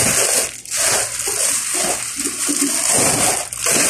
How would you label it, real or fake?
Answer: real